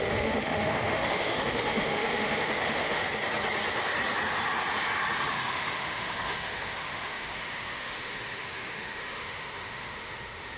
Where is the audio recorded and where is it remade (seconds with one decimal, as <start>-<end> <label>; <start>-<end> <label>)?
0.0-3.0 remade; 3.0-5.3 recorded; 5.3-10.6 remade